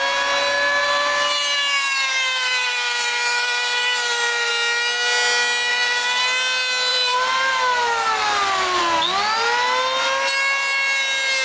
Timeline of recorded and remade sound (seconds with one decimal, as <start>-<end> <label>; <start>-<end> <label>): 0.0-0.8 recorded; 0.8-4.5 remade; 4.5-5.7 recorded; 5.7-6.2 remade; 6.2-6.9 recorded; 6.9-8.8 remade; 8.8-11.4 recorded